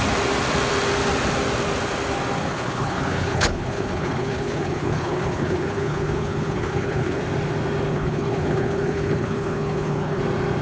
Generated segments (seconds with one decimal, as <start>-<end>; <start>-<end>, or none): 2.4-7.2; 7.9-10.2